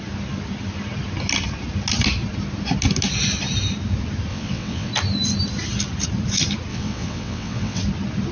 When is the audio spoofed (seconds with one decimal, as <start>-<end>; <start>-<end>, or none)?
4.3-4.9; 6.7-7.8